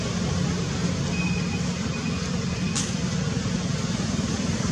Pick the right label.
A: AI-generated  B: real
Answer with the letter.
B